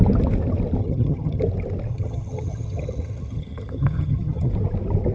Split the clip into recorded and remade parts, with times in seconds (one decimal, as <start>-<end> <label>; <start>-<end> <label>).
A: 0.0-0.8 recorded; 0.8-1.4 remade; 1.4-1.9 recorded; 1.9-4.5 remade; 4.5-5.1 recorded